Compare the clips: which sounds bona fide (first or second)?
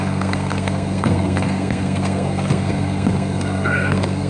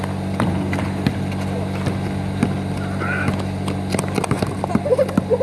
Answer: second